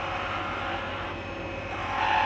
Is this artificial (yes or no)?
no